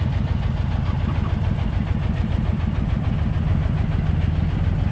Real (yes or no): yes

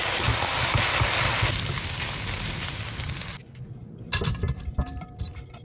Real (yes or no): no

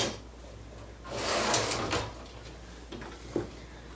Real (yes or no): yes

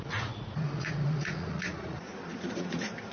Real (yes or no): no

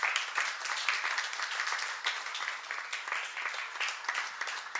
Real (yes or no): yes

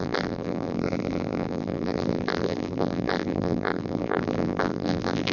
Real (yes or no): no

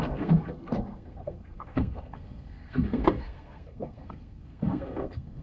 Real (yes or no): no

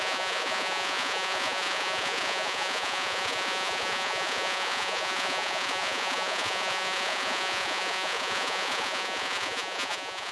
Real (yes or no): no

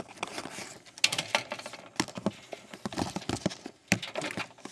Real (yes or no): yes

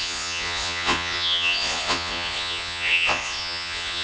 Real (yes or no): no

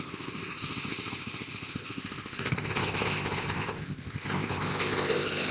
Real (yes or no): no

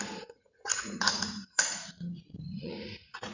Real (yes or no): no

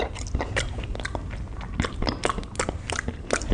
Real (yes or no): yes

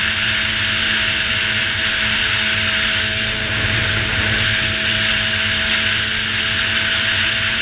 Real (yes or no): yes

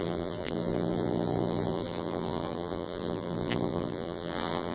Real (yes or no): no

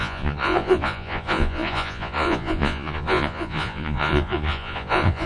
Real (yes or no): no